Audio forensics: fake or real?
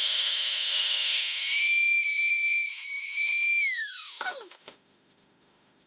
fake